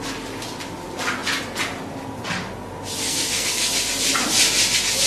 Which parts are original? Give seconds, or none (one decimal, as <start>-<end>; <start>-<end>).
0.0-3.0; 3.7-5.1